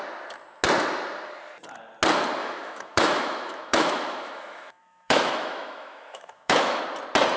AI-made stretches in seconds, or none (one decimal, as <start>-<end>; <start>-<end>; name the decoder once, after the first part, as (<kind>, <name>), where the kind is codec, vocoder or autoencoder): 2.4-6.8 (autoencoder, DAC-VAE)